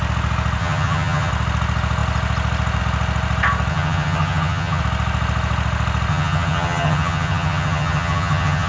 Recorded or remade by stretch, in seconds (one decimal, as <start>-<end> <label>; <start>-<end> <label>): 0.0-0.6 recorded; 0.6-1.3 remade; 1.3-3.7 recorded; 3.7-4.8 remade; 4.8-6.1 recorded; 6.1-8.7 remade